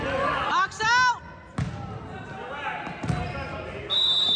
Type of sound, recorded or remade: recorded